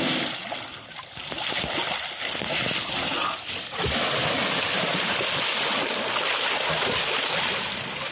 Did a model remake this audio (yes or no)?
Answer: no